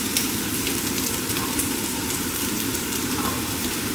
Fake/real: fake